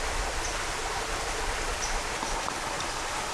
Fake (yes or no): no